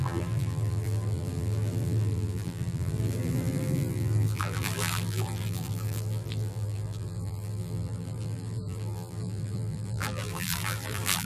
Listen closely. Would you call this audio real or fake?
fake